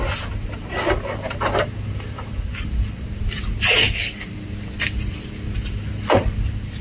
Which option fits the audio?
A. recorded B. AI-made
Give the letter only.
A